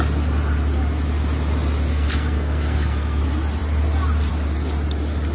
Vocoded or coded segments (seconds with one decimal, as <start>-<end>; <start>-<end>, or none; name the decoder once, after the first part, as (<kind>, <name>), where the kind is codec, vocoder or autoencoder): 1.9-3.2 (codec, SNAC)